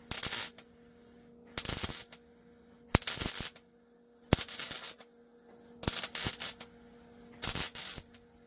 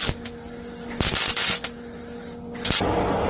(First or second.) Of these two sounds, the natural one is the first